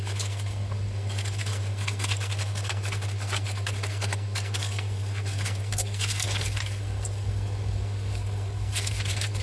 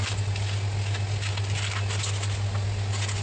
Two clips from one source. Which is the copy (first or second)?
first